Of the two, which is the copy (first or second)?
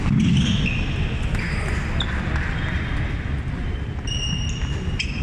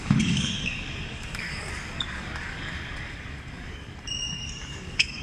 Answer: second